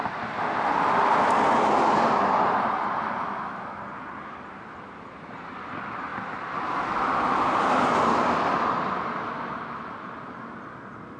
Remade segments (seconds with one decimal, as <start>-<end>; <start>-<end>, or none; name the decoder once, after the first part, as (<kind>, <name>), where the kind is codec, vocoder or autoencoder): none